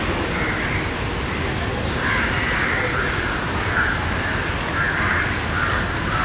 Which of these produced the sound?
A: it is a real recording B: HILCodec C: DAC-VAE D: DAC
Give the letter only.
A